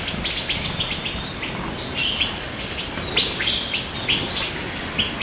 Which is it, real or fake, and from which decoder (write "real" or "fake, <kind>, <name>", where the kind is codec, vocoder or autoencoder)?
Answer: real